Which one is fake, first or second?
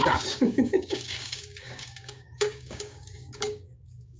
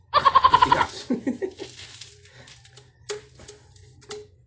first